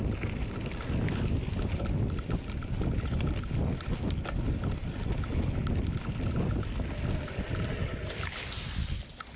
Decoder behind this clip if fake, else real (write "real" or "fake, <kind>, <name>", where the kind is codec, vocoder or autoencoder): real